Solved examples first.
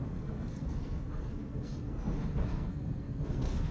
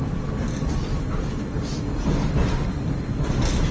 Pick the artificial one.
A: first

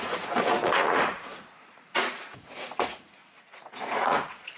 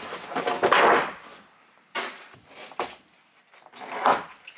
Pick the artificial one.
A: first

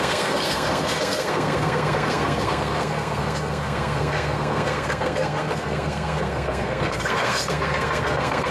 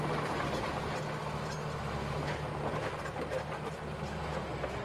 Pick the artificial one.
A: first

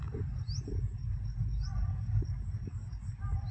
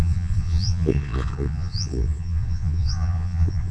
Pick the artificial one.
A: second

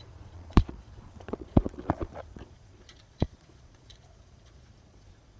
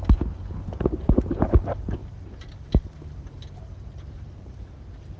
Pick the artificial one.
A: first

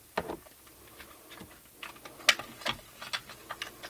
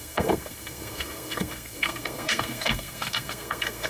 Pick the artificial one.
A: second